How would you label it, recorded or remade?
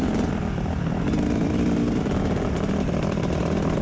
recorded